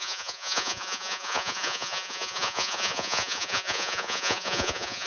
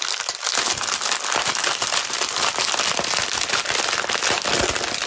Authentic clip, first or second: second